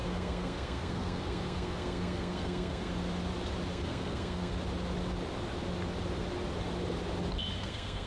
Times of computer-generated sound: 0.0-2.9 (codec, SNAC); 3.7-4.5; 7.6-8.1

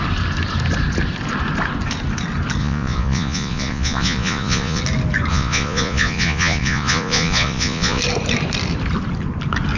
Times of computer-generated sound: 2.6-4.8 (vocoder, Vocos); 5.3-8.0

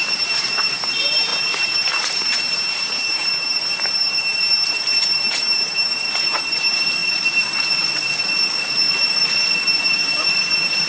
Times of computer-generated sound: 0.0-7.0 (vocoder, BigVGAN v2); 9.6-10.9

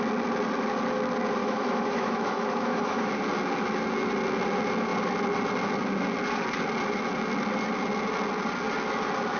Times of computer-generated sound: 1.4-3.1 (autoencoder, DAC-VAE)